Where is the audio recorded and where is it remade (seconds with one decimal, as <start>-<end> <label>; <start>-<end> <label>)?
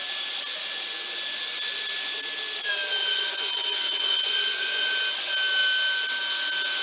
0.0-3.0 recorded; 3.0-4.9 remade; 4.9-6.8 recorded